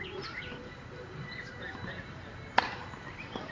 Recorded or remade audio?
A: recorded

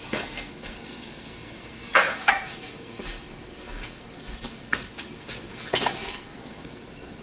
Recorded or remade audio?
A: remade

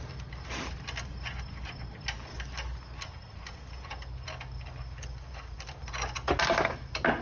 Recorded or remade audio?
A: recorded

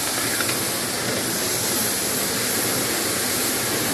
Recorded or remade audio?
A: recorded